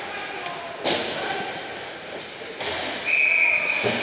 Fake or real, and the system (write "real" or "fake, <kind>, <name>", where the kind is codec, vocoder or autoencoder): real